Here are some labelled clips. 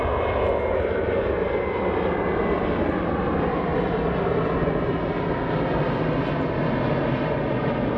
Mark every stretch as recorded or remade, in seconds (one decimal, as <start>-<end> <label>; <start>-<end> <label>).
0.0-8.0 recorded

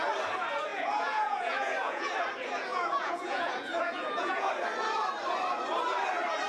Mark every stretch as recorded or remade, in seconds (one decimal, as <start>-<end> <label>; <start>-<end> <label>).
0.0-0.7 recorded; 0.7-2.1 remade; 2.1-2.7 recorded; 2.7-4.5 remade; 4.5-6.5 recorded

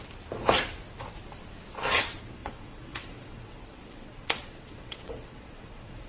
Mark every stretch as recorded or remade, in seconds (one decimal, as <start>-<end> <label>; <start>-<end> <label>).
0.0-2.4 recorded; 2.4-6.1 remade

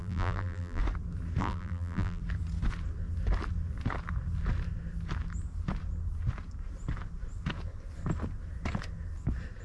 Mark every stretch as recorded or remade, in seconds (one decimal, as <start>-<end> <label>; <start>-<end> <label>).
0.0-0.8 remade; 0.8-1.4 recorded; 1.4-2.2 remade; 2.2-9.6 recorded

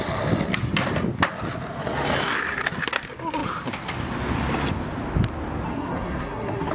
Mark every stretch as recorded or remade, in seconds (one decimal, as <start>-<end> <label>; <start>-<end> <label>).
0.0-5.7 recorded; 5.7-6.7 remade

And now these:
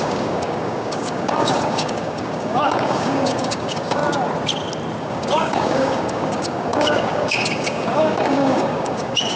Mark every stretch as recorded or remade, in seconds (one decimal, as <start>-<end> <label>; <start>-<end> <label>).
0.0-4.0 remade; 4.0-5.0 recorded; 5.0-9.4 remade